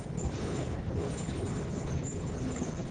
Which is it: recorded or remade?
remade